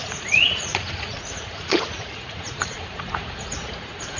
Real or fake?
fake